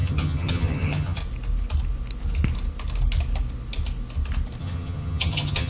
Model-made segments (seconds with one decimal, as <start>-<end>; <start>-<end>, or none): 0.0-1.2; 4.6-5.7